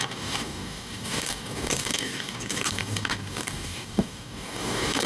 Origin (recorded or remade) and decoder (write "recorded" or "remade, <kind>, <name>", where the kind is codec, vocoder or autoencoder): remade, codec, DAC